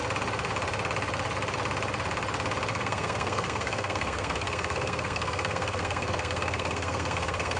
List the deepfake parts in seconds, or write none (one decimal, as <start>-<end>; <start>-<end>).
2.7-7.6